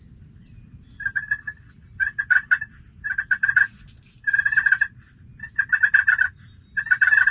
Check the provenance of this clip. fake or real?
real